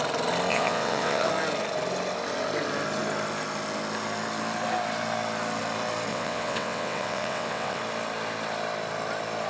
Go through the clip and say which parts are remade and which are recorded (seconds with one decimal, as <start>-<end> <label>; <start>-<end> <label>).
0.0-0.5 recorded; 0.5-1.3 remade; 1.3-6.1 recorded; 6.1-7.8 remade; 7.8-9.5 recorded